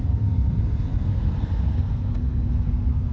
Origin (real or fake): fake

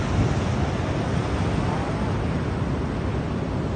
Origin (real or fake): real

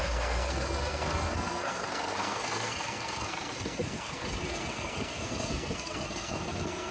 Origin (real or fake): fake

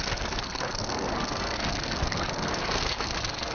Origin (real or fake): fake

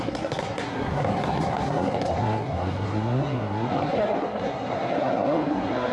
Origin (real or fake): fake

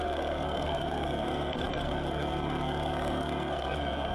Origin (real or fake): fake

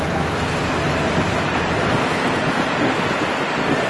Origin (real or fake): real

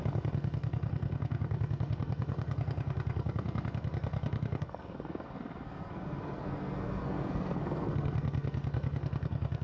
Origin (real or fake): fake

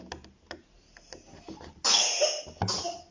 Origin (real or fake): real